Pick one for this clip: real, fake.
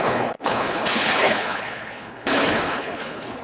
fake